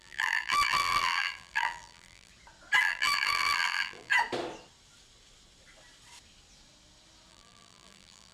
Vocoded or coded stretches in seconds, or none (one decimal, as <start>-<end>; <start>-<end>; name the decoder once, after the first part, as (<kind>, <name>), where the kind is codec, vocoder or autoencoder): 0.0-2.3 (vocoder, BigVGAN v2); 2.8-4.1; 7.3-8.3